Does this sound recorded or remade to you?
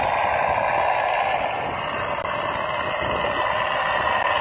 recorded